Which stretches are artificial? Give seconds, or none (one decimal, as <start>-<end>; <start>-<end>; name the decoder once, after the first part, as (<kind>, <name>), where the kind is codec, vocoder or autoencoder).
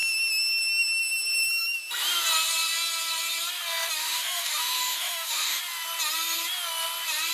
4.0-5.6 (autoencoder, DAC-VAE)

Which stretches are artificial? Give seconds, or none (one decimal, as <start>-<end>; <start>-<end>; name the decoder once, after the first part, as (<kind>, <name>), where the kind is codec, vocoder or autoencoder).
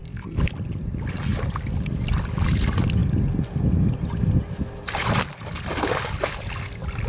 none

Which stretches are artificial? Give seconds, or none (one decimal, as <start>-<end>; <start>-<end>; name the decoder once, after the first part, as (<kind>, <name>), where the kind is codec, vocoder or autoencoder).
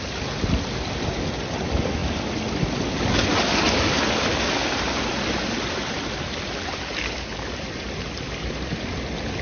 none